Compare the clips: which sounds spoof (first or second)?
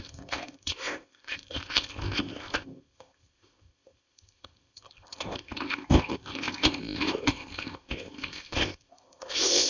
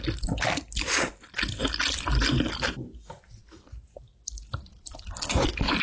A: first